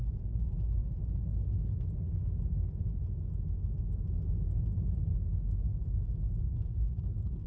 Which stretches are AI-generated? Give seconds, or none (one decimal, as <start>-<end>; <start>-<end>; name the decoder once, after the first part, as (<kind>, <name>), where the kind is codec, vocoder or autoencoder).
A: 0.0-0.8 (codec, DAC); 5.0-5.7; 6.4-7.5